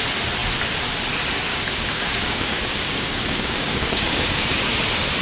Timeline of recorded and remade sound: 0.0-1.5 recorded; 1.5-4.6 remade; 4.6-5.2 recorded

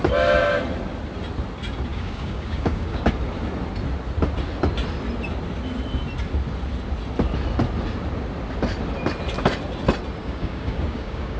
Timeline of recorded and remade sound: 0.0-1.9 recorded; 1.9-3.1 remade; 3.1-10.2 recorded; 10.2-11.4 remade

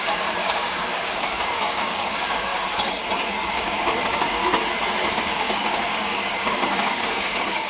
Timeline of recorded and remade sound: 0.0-2.5 remade; 2.5-3.5 recorded; 3.5-4.4 remade; 4.4-5.1 recorded; 5.1-7.7 remade

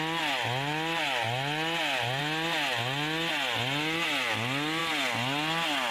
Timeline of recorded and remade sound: 0.0-5.9 recorded

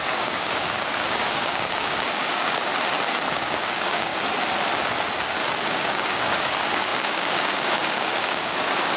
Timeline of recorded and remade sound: 0.0-2.7 remade; 2.7-3.3 recorded; 3.3-4.1 remade; 4.1-5.7 recorded; 5.7-9.0 remade

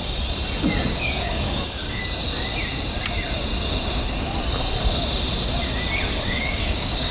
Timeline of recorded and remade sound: 0.0-0.9 recorded; 0.9-2.0 remade; 2.0-6.2 recorded; 6.2-7.1 remade

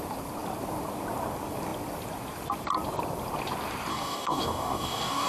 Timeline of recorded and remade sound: 0.0-3.9 recorded; 3.9-5.3 remade